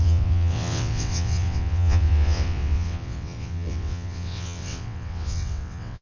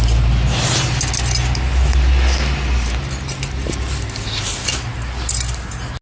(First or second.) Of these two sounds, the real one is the second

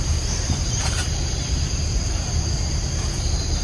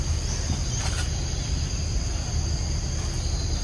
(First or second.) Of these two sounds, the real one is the second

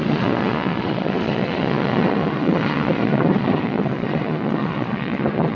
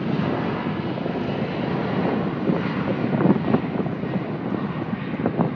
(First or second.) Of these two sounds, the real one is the second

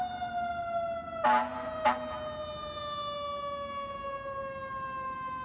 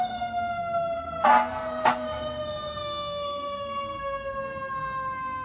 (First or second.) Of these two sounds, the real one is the first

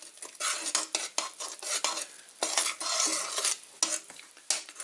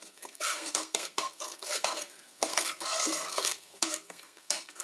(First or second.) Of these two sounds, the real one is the first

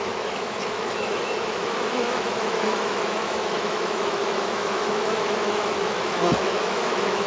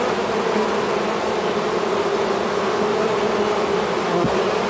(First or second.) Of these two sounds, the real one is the second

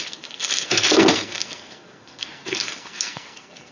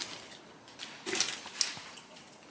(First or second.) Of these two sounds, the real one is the second